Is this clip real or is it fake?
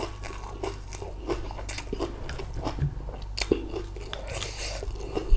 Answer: real